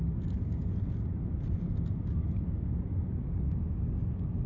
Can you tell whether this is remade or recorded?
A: recorded